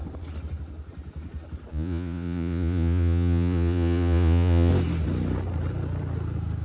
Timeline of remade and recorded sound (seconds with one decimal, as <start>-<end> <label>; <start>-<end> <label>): 0.0-1.7 recorded; 1.7-4.7 remade; 4.7-6.6 recorded